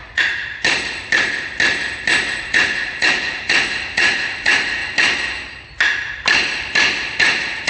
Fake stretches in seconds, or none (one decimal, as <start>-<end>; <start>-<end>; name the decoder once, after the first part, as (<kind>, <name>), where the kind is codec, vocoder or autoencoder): 0.0-0.4 (vocoder, Vocos); 2.4-4.8; 7.2-7.7